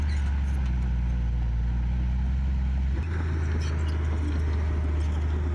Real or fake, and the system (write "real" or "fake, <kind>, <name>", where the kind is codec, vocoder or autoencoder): real